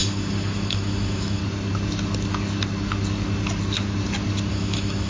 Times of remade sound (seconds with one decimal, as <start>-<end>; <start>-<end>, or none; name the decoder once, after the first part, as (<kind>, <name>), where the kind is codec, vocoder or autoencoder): 0.0-1.4 (autoencoder, DAC-VAE); 4.5-5.1